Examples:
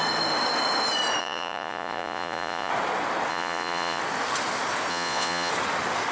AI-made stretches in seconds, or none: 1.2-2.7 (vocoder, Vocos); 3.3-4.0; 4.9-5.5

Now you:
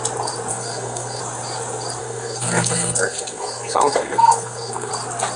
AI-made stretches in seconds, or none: 0.5-1.2 (codec, SNAC); 2.0-4.9

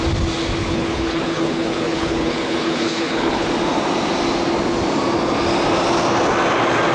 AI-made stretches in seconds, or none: 0.6-3.5 (codec, HILCodec)

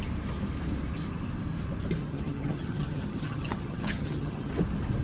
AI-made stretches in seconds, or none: 2.0-4.5 (vocoder, HiFi-GAN)

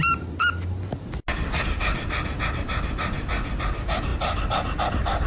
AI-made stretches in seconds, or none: none

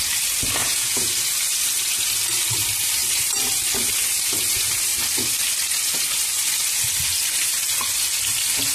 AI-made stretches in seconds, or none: 0.6-1.1 (vocoder, Vocos)

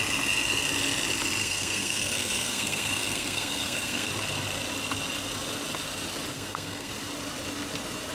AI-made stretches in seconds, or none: 1.4-4.1 (codec, SNAC); 6.3-6.9